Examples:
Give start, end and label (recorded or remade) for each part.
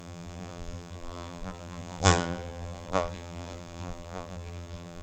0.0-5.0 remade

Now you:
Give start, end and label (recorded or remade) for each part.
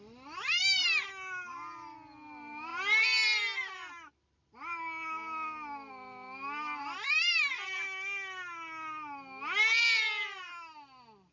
0.0-11.3 recorded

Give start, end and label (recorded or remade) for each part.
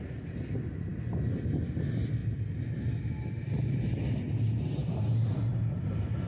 0.0-4.8 recorded; 4.8-6.3 remade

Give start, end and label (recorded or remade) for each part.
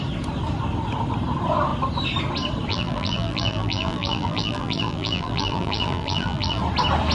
0.0-2.7 recorded; 2.7-6.6 remade; 6.6-7.1 recorded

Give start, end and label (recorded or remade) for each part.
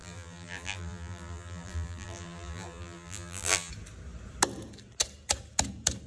0.0-3.7 remade; 3.7-6.1 recorded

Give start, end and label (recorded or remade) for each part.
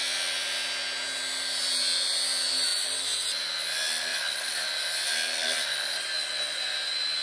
0.0-4.1 recorded; 4.1-6.0 remade; 6.0-7.2 recorded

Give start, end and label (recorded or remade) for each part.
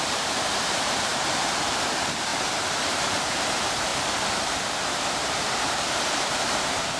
0.0-3.9 remade; 3.9-4.8 recorded; 4.8-7.0 remade